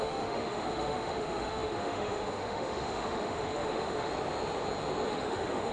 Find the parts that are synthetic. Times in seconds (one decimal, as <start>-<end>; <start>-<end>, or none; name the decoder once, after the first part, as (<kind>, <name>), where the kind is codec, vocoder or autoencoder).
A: 0.0-4.1 (autoencoder, DAC-VAE); 5.1-5.7